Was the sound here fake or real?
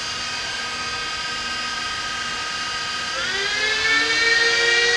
real